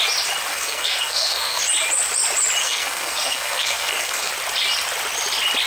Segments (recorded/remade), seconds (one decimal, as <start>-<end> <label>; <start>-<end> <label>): 0.0-0.5 recorded; 0.5-1.6 remade; 1.6-2.6 recorded; 2.6-4.3 remade; 4.3-5.7 recorded